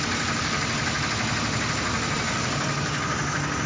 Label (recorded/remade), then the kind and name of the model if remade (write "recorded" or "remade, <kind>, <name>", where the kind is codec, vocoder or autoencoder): recorded